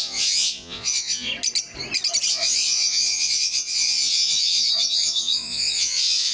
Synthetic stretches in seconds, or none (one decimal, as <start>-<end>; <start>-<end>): 0.0-1.3; 2.3-6.3